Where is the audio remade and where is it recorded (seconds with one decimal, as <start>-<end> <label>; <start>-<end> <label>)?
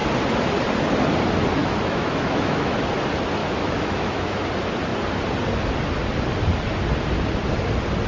0.0-1.6 recorded; 1.6-2.8 remade; 2.8-3.4 recorded; 3.4-4.5 remade; 4.5-8.1 recorded